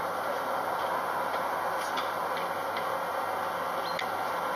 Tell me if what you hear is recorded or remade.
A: recorded